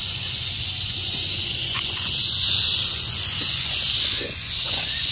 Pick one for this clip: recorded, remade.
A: remade